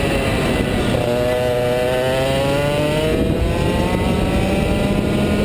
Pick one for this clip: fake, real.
real